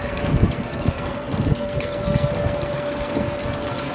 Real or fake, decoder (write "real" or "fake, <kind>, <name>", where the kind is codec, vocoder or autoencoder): fake, codec, SNAC